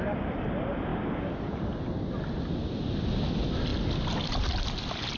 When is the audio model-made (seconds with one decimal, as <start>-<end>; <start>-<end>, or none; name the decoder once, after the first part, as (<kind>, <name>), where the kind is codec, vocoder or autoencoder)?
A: none